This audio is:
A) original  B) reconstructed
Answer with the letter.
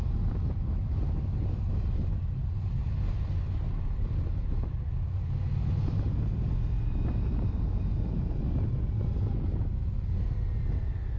A